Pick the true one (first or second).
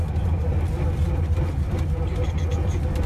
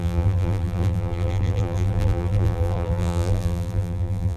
first